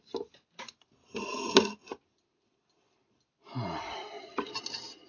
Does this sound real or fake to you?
real